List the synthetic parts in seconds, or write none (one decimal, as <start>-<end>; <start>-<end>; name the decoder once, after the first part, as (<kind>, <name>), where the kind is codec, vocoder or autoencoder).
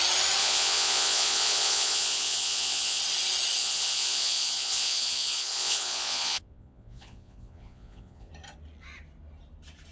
0.4-3.0 (vocoder, Vocos); 3.6-8.3